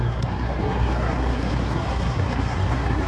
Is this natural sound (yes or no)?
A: no